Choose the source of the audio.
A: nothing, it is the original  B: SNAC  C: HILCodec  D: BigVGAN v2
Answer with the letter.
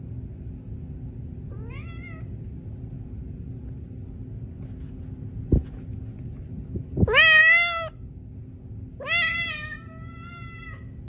A